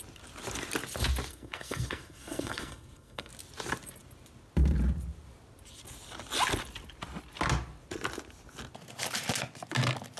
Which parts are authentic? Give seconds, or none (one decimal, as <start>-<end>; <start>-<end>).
0.0-1.3; 3.3-10.2